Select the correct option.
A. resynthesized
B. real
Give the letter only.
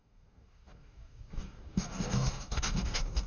A